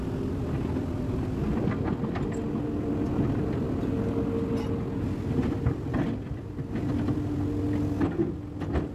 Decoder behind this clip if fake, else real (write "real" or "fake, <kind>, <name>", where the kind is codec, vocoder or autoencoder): real